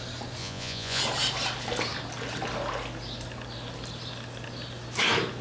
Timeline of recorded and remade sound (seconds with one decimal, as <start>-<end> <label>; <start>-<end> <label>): 0.0-0.4 recorded; 0.4-1.0 remade; 1.0-5.4 recorded